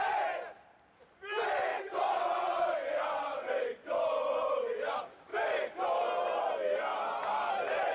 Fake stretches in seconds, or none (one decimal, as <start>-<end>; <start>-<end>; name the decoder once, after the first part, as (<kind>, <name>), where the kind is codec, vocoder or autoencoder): 1.7-3.5 (vocoder, WaveNeXt)